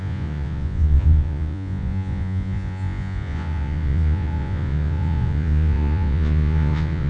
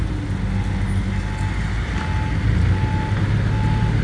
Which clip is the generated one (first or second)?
first